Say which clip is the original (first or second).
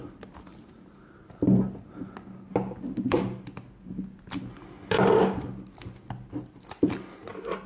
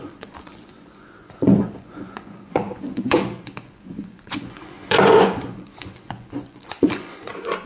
first